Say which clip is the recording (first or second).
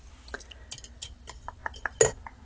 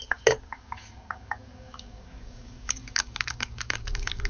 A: first